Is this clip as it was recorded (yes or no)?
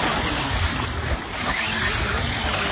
yes